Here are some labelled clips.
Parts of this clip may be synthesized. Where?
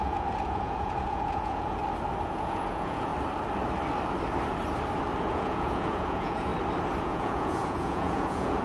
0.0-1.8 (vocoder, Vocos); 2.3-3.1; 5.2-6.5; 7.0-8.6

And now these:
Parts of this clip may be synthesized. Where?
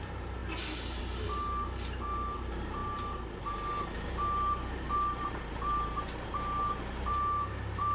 0.0-0.4 (vocoder, BigVGAN v2); 1.0-7.9